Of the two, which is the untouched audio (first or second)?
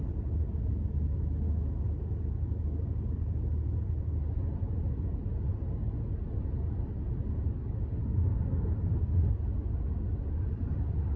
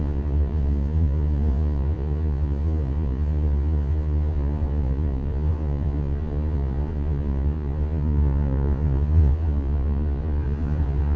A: first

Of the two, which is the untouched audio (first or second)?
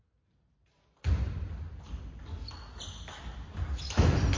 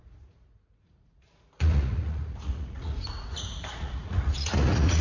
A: first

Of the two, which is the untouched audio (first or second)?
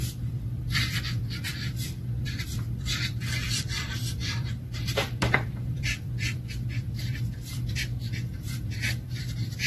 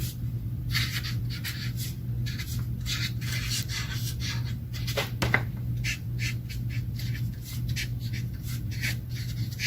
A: second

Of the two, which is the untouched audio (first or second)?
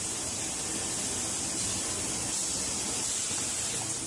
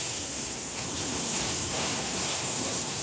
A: first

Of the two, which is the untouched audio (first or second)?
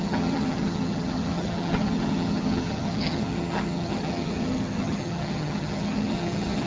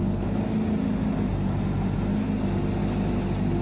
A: second